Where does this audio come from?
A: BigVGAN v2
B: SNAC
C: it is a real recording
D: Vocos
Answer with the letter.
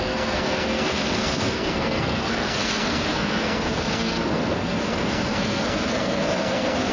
B